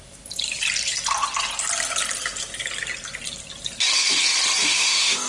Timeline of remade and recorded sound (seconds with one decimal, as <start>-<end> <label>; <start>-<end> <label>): 0.0-4.6 recorded; 4.6-5.3 remade